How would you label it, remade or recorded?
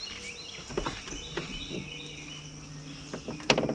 recorded